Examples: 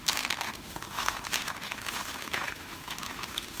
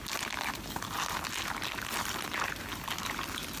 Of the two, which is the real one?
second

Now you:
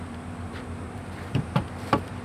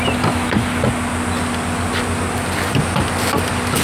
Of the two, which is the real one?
second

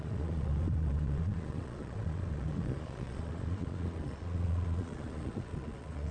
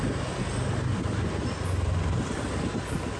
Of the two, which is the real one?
second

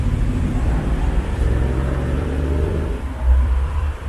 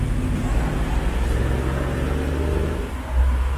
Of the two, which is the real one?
second